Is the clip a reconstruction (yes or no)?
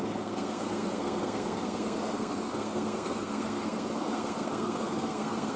yes